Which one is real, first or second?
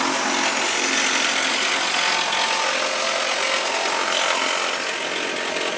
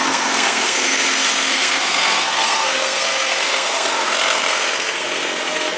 first